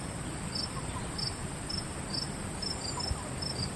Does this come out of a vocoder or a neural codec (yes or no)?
no